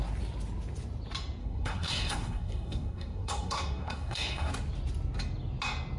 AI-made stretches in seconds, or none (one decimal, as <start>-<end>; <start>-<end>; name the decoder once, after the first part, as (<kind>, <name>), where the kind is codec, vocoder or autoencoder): 1.4-4.5 (codec, SNAC)